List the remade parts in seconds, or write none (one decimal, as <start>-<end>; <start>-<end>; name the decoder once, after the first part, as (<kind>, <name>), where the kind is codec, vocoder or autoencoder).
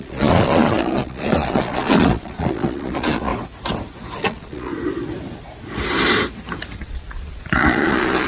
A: 0.0-3.3 (vocoder, Vocos); 4.2-4.7; 6.8-8.3